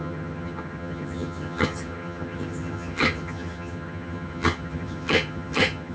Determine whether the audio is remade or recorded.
remade